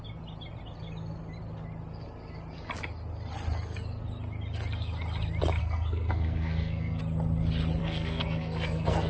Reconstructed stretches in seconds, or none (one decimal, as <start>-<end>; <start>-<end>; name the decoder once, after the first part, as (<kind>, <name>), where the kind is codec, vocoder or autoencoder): 5.6-7.0 (codec, SNAC); 7.8-9.1